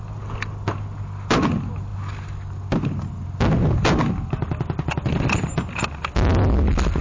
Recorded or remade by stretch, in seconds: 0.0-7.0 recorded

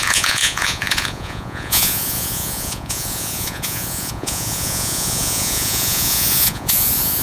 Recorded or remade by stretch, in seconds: 0.0-7.2 remade